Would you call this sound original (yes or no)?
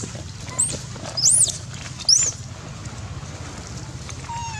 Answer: yes